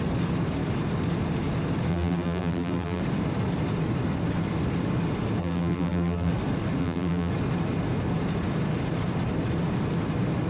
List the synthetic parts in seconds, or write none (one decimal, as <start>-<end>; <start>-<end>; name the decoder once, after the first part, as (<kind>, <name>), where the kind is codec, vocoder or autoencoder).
1.9-3.0 (vocoder, BigVGAN v2); 5.4-6.3; 6.8-7.3